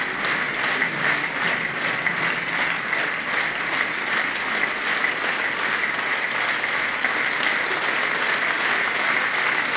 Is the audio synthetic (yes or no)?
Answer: no